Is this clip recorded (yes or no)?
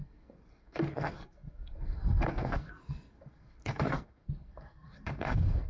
no